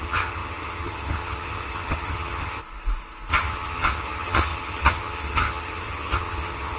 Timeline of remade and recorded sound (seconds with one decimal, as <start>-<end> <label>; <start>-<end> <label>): 0.0-2.6 remade; 2.6-3.3 recorded; 3.3-6.8 remade